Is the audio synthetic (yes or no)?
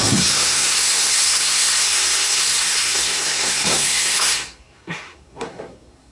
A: yes